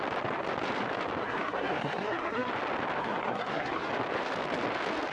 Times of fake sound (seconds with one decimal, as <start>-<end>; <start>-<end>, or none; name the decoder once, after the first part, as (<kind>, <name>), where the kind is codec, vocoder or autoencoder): 1.2-2.5 (codec, SNAC); 3.0-3.9